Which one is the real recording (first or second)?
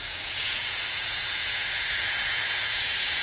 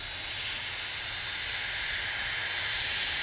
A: second